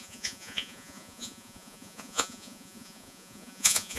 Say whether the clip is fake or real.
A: fake